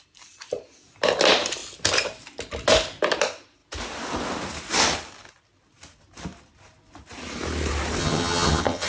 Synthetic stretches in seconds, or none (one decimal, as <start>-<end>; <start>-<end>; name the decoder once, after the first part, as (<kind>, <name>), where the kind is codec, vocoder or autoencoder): 8.0-8.9 (vocoder, HiFi-GAN)